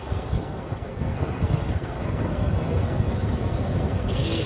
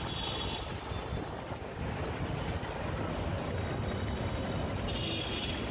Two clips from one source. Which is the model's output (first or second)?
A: first